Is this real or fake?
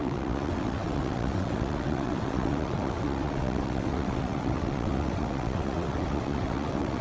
fake